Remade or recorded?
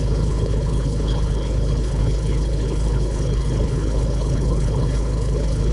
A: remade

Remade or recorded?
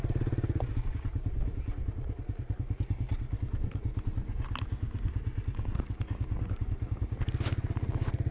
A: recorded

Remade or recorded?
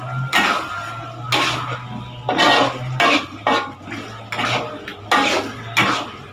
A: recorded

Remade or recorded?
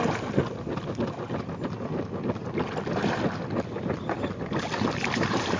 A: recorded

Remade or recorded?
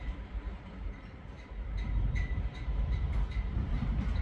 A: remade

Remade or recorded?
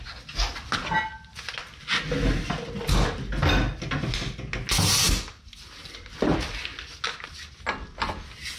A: recorded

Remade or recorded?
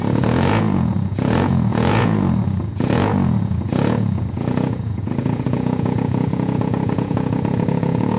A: remade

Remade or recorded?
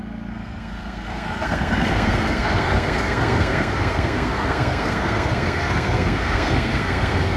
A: remade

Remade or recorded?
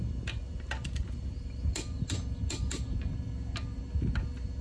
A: recorded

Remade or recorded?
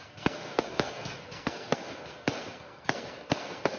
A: remade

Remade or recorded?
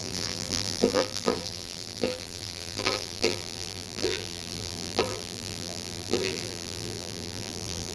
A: remade